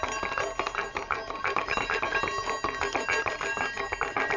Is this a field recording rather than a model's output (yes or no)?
yes